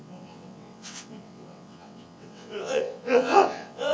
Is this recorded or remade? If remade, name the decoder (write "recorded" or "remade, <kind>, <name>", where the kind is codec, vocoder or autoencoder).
remade, vocoder, WaveNeXt